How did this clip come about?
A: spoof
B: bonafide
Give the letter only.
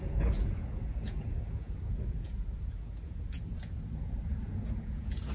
A